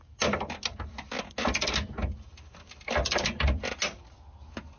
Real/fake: real